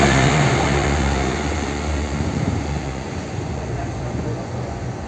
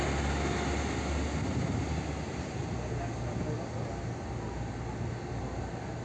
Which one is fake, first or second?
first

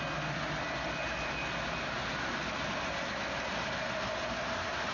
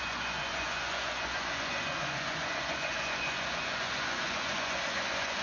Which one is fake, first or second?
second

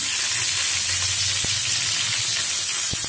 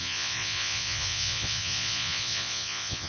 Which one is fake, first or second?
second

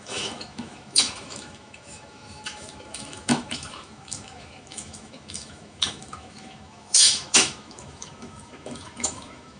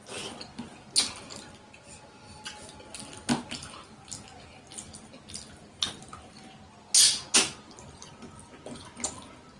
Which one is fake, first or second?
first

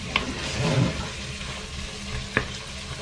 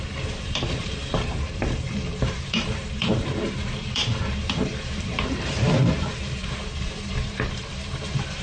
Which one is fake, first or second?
second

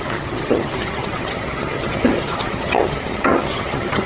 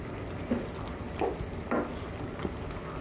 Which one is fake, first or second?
first